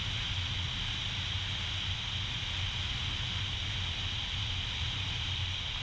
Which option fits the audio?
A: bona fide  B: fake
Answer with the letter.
A